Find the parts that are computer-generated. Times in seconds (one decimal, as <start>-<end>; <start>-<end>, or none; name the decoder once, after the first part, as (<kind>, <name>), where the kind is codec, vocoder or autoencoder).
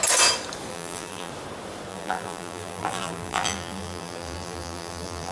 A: 0.7-1.3 (vocoder, BigVGAN v2); 1.9-5.3